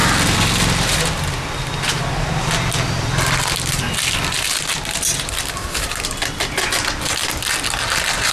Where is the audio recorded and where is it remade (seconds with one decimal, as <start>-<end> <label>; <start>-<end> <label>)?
0.0-8.3 recorded